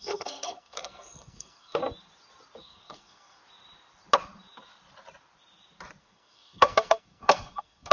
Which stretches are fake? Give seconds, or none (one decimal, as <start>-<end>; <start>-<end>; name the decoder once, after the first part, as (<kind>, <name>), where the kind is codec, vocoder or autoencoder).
0.0-1.8 (codec, SNAC); 2.6-3.4; 6.0-7.9